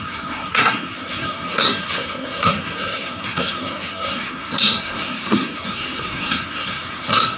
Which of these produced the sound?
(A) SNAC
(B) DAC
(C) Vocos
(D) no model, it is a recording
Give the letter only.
A